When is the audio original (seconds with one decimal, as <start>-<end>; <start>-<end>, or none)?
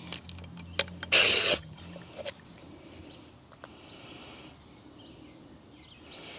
0.0-1.2; 1.8-6.4